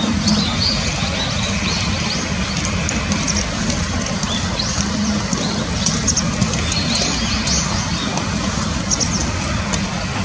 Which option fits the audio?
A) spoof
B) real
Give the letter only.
B